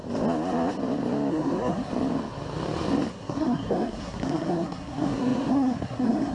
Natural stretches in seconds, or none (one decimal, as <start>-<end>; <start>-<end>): 0.0-1.3; 1.9-3.1

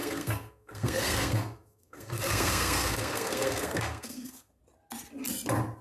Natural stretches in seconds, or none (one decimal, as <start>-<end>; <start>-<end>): 4.6-5.8

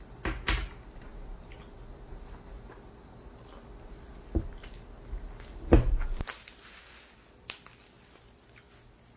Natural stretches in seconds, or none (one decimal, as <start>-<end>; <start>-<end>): 0.0-9.2

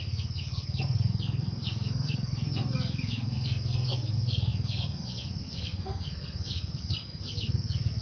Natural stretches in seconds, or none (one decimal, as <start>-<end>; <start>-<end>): none